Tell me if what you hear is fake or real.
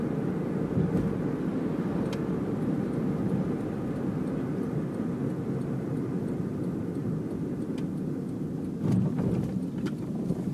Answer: real